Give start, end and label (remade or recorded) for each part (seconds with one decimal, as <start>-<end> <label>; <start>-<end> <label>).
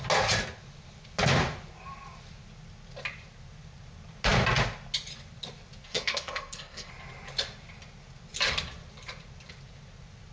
0.0-5.8 recorded; 5.8-6.9 remade; 6.9-10.3 recorded